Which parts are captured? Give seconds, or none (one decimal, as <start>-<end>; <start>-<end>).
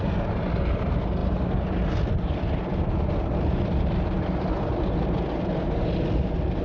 0.0-6.6